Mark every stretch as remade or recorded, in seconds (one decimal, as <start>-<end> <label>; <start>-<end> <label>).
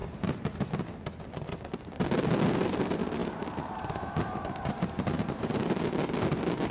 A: 0.0-0.7 remade; 0.7-3.2 recorded; 3.2-5.9 remade; 5.9-6.7 recorded